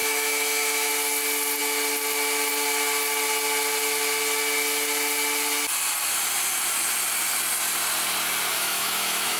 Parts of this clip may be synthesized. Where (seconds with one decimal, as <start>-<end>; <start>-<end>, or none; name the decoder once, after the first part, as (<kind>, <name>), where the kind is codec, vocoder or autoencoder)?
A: 0.0-0.9 (autoencoder, DAC-VAE); 8.5-9.4